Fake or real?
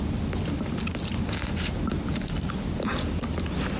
real